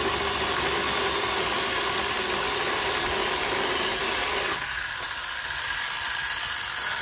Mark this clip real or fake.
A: real